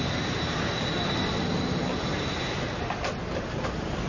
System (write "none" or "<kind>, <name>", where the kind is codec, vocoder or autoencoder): none